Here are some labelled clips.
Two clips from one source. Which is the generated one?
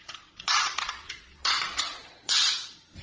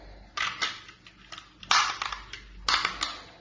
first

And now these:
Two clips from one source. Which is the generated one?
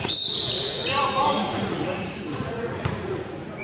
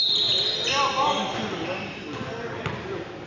first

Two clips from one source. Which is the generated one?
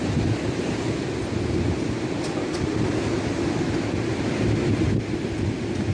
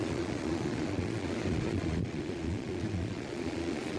second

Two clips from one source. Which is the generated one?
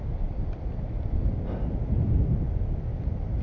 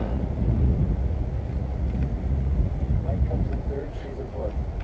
second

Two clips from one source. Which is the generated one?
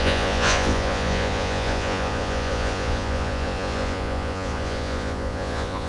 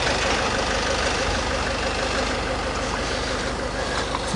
first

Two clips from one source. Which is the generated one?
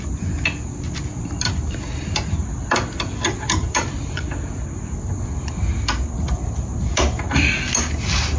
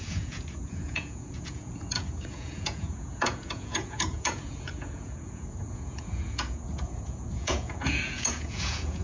second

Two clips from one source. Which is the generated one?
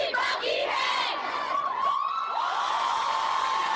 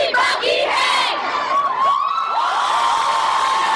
first